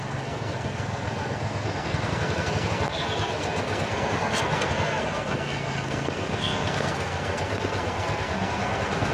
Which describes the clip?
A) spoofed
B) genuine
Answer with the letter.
A